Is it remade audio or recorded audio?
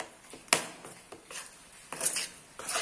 recorded